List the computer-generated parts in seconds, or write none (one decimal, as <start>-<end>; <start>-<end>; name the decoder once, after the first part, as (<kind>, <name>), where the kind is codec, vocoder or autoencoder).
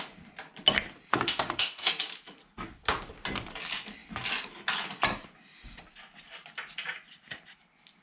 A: 1.1-1.9 (autoencoder, DAC-VAE)